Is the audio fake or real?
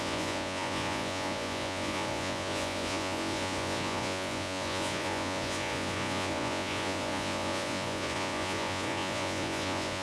fake